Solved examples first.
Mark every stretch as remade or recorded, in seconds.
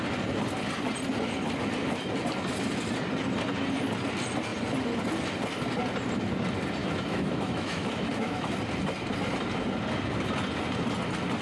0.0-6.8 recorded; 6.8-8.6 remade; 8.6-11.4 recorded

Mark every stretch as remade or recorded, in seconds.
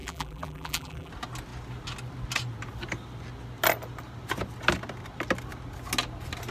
0.0-1.1 remade; 1.1-6.5 recorded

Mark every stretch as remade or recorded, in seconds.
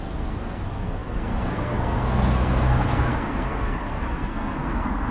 0.0-5.1 remade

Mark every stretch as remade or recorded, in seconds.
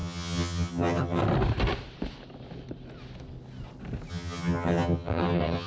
0.0-1.2 remade; 1.2-4.1 recorded; 4.1-5.7 remade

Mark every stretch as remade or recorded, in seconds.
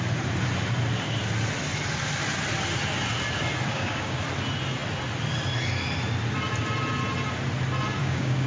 0.0-3.7 recorded; 3.7-4.2 remade; 4.2-8.0 recorded; 8.0-8.5 remade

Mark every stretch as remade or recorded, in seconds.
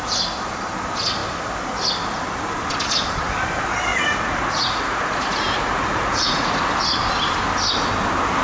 0.0-3.9 recorded; 3.9-6.6 remade; 6.6-8.4 recorded